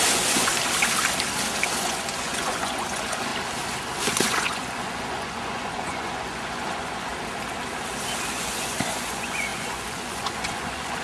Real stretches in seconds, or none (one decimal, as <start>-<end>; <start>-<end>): 0.5-1.8; 3.3-4.0; 7.1-8.3